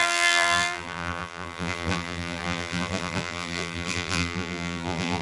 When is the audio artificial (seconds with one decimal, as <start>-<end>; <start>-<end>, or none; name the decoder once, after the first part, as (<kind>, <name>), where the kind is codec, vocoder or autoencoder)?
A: 0.0-5.2 (vocoder, BigVGAN v2)